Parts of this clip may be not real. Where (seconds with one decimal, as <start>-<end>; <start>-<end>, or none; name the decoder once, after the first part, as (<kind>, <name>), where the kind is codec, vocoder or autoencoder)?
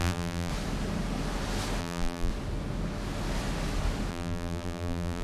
0.0-0.5 (vocoder, BigVGAN v2); 1.8-2.3; 4.1-5.2